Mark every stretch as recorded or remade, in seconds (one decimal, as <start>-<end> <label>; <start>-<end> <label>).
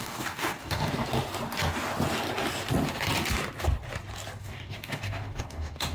0.0-0.9 remade; 0.9-4.4 recorded; 4.4-5.9 remade